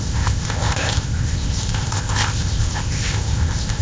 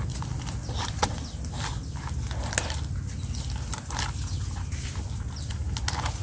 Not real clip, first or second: first